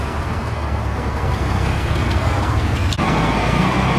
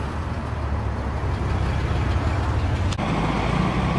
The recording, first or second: second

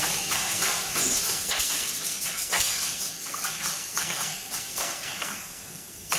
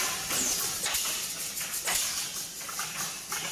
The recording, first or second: second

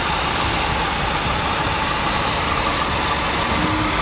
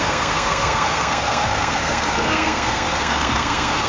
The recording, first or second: first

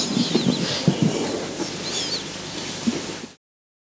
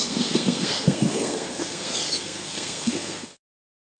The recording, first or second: first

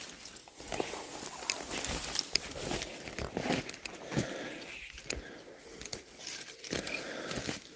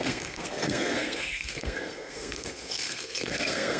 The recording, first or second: first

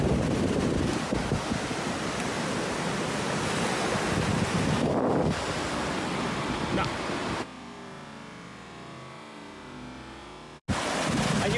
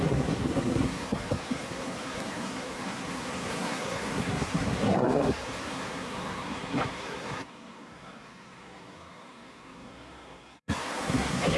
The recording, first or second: first